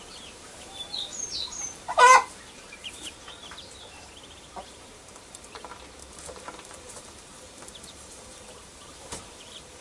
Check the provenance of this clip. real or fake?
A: fake